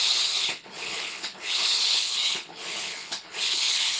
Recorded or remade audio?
remade